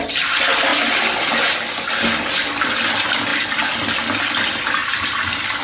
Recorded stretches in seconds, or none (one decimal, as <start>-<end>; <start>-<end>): 0.0-4.8